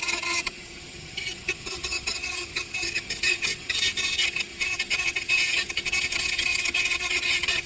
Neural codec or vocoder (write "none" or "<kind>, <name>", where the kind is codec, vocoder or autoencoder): vocoder, HiFi-GAN